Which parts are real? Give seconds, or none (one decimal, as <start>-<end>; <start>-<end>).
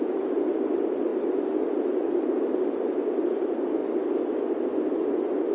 0.0-5.5